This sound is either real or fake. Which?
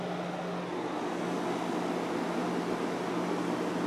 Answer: real